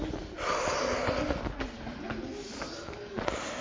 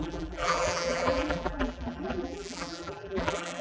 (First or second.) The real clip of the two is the first